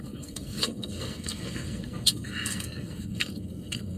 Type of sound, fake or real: fake